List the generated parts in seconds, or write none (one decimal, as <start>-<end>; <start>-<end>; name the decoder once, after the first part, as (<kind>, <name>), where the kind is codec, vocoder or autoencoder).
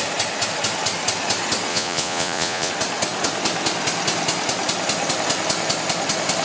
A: 1.7-2.7 (vocoder, Vocos)